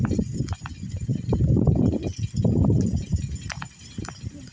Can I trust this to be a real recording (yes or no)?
no